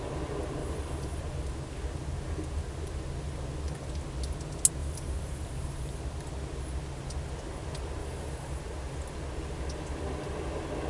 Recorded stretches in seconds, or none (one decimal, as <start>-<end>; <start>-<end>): 0.0-0.6; 1.2-4.8; 6.0-8.0; 8.6-10.9